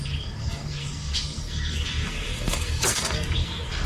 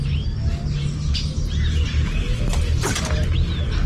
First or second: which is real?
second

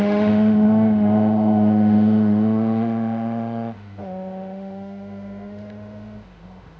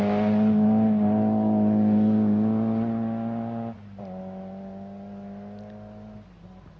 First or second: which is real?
second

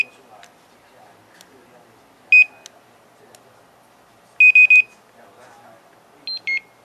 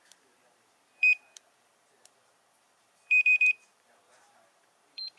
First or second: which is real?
first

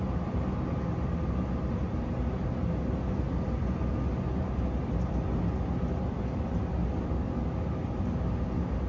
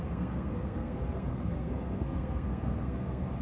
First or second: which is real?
first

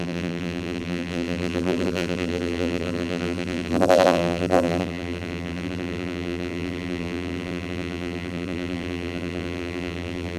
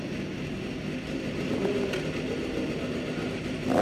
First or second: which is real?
second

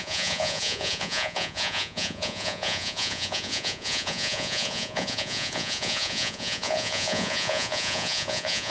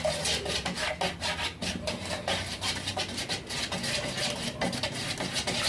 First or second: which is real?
second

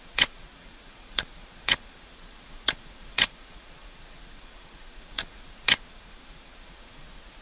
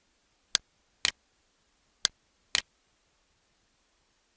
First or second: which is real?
second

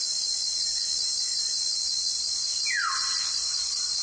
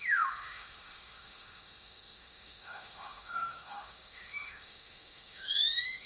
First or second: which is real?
first